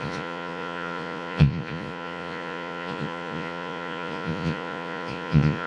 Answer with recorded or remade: remade